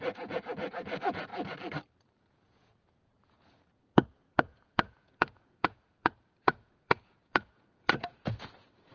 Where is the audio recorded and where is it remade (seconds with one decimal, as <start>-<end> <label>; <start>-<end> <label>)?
0.0-1.3 remade; 1.3-2.2 recorded; 2.2-8.9 remade

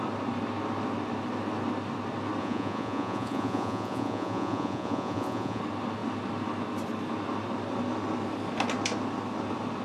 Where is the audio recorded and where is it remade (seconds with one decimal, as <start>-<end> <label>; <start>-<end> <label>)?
0.0-2.4 recorded; 2.4-5.6 remade; 5.6-9.8 recorded

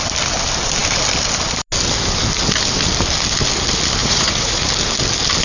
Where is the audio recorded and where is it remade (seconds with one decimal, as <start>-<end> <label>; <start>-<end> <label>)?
0.0-4.0 recorded; 4.0-4.6 remade; 4.6-5.4 recorded

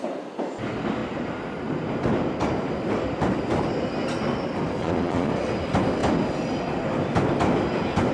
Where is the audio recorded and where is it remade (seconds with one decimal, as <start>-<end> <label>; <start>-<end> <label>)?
0.0-4.8 recorded; 4.8-5.3 remade; 5.3-8.1 recorded

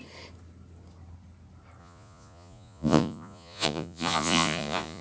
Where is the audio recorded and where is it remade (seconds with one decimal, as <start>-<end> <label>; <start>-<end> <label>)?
0.0-1.8 recorded; 1.8-5.0 remade

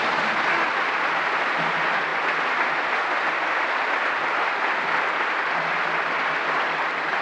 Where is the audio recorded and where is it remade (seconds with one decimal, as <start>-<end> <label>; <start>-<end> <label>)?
0.0-7.2 recorded

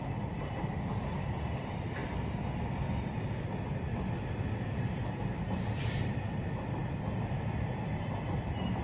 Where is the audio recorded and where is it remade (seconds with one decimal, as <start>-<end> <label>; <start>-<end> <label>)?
0.0-8.8 recorded